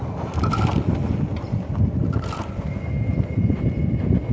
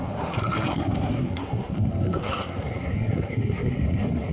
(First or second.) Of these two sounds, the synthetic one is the second